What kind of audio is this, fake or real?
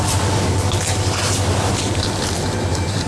real